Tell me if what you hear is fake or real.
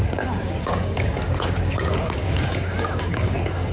fake